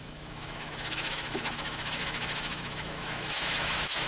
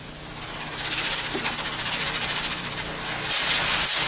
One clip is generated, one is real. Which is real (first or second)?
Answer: second